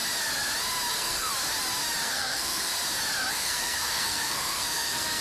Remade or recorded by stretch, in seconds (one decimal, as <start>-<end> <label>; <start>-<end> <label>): 0.0-0.9 recorded; 0.9-1.3 remade; 1.3-2.0 recorded; 2.0-2.7 remade; 2.7-3.3 recorded; 3.3-5.2 remade